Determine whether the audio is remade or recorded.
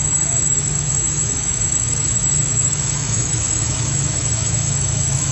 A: remade